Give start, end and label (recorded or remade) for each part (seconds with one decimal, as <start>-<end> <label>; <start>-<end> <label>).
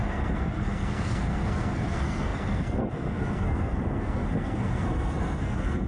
0.0-5.9 remade